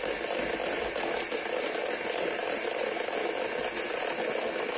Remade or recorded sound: recorded